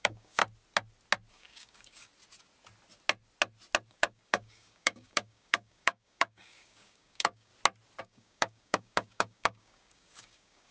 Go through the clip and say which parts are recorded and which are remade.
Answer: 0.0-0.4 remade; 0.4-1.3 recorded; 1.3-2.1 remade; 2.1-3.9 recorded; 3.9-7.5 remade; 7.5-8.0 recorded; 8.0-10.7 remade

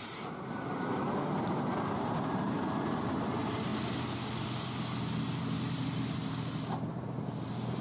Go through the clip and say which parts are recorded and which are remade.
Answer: 0.0-3.7 remade; 3.7-7.8 recorded

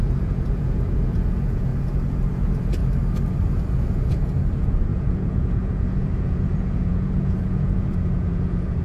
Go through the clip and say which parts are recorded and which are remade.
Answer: 0.0-2.8 remade; 2.8-3.5 recorded; 3.5-8.8 remade

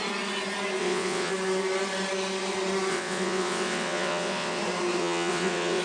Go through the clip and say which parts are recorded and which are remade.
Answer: 0.0-0.8 recorded; 0.8-1.3 remade; 1.3-2.9 recorded; 2.9-4.6 remade; 4.6-5.0 recorded; 5.0-5.8 remade

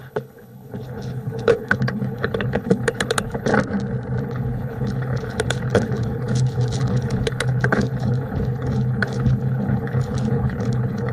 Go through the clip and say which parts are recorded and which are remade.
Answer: 0.0-3.5 remade; 3.5-4.2 recorded; 4.2-11.1 remade